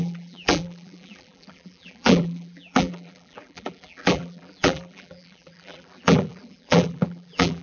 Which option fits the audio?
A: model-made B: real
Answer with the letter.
A